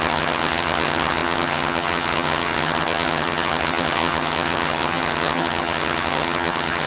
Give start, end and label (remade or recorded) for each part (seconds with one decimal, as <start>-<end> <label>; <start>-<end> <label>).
0.0-6.9 remade